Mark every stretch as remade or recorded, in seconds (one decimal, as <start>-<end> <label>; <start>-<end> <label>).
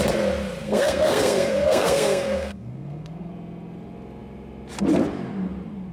0.0-0.6 recorded; 0.6-3.3 remade; 3.3-5.9 recorded